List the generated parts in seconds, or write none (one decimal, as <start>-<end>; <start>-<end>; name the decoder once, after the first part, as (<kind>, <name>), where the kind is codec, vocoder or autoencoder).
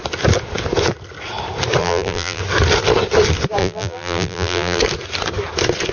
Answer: 1.8-2.4 (vocoder, BigVGAN v2); 3.6-4.8